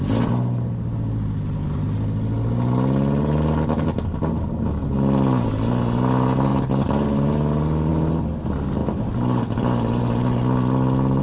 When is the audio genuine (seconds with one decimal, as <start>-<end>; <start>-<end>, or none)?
0.0-11.2